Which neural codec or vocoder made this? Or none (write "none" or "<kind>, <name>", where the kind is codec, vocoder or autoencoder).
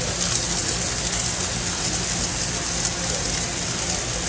none